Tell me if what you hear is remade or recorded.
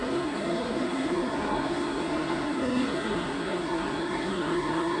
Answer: remade